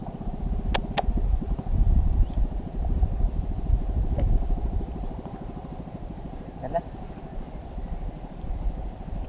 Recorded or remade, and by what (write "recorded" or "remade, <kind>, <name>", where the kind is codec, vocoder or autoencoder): recorded